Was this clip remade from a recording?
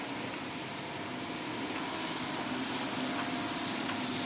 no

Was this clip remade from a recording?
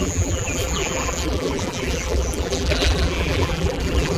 yes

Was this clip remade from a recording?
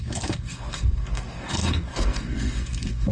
yes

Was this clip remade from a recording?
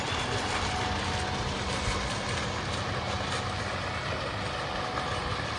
no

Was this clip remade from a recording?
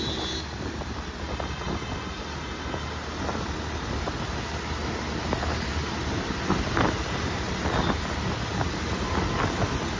no